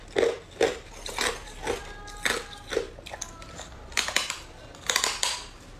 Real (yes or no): yes